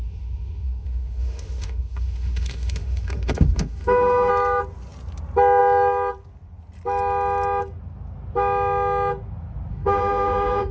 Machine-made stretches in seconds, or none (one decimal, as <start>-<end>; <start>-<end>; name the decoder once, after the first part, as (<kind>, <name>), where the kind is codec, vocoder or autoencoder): 0.0-4.3 (autoencoder, DAC-VAE); 9.7-10.7